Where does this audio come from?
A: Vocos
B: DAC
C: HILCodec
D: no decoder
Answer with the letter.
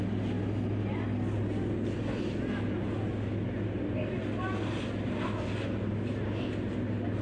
D